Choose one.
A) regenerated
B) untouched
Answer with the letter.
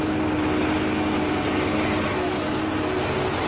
B